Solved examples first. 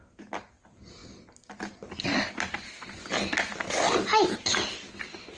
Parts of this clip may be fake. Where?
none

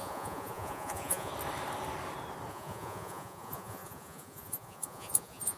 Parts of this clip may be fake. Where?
0.0-1.3 (vocoder, Vocos); 2.5-5.6

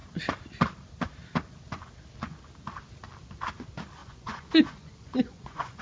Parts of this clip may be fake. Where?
4.0-5.8 (vocoder, Vocos)

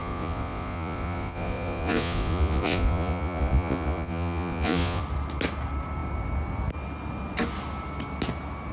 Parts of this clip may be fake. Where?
0.0-5.0 (vocoder, Vocos)

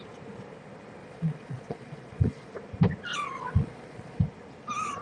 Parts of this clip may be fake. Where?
1.0-2.5 (vocoder, Vocos); 3.1-4.2

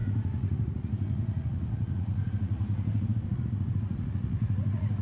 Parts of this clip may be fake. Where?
0.0-5.0 (vocoder, Vocos)